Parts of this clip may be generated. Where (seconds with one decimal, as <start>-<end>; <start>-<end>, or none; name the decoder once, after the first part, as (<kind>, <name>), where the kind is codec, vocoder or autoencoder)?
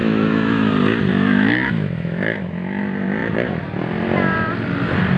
0.0-0.7 (autoencoder, DAC-VAE); 1.1-2.8